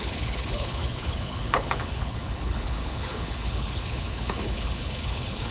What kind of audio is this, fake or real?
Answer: fake